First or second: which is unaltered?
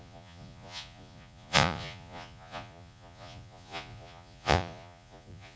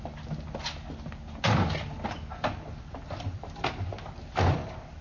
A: second